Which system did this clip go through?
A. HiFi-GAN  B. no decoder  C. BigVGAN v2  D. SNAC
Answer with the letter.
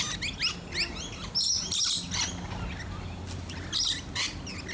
B